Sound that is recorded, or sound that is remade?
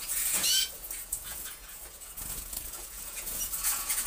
remade